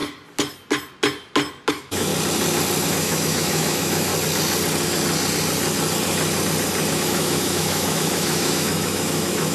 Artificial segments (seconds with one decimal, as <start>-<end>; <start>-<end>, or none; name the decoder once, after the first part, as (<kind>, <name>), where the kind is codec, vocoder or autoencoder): 1.7-2.1 (autoencoder, DAC-VAE); 2.9-4.1; 6.9-9.5